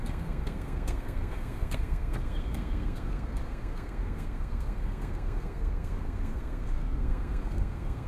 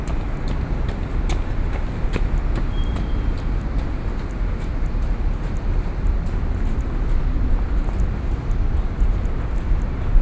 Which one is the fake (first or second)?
first